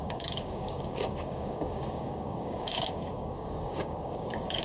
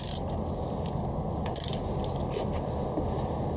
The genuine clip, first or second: second